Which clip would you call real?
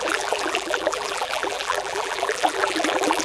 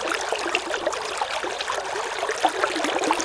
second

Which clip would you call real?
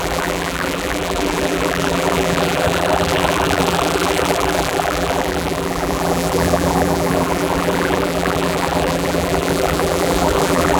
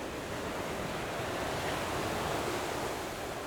second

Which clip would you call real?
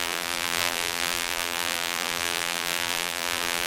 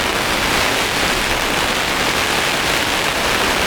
second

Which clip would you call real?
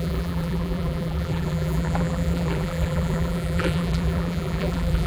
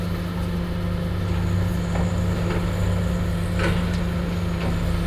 second